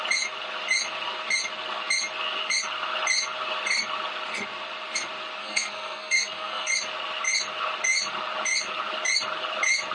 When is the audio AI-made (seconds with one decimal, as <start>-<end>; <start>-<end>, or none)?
5.4-6.7